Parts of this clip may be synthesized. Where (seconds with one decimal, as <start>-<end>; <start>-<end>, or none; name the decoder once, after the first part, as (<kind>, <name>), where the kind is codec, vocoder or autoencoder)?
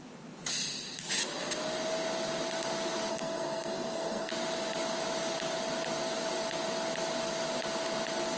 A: 3.1-4.3 (codec, SNAC)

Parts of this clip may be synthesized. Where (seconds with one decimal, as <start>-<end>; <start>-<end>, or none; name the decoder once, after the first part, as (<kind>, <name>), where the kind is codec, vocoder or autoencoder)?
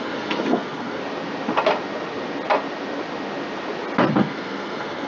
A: 0.0-1.0 (codec, SNAC); 4.1-5.1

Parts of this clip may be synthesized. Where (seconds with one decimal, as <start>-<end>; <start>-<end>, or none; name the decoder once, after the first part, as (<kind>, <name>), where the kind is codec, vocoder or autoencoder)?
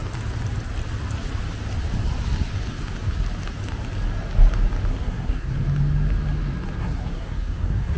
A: 4.9-5.5 (codec, SNAC); 6.8-8.0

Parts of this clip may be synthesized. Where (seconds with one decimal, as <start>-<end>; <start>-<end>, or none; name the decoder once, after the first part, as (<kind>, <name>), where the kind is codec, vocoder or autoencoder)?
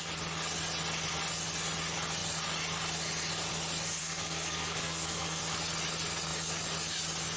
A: 4.0-5.4 (codec, SNAC)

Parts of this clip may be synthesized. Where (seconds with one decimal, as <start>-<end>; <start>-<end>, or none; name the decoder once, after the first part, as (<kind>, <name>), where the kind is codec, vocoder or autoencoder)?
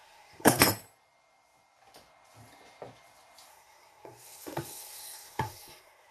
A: 0.0-0.6 (codec, SNAC); 3.5-6.1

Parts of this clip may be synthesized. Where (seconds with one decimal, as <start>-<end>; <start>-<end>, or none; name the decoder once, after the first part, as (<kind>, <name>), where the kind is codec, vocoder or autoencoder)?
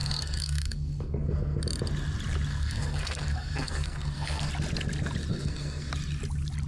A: 0.0-1.6 (codec, SNAC); 2.5-4.5; 5.3-5.9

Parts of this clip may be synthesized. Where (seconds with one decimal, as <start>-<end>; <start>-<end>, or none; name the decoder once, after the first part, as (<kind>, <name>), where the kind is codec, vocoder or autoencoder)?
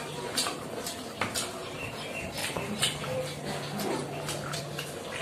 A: none